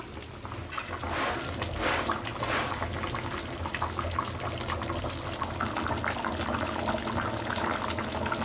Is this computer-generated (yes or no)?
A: no